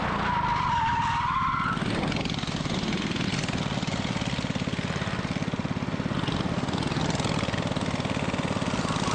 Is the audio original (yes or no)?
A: yes